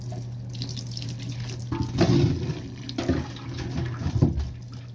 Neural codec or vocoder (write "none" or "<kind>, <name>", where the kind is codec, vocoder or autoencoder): none